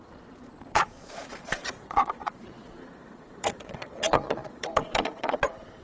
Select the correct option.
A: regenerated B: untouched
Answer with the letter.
A